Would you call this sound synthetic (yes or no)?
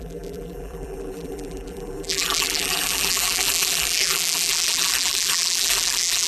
yes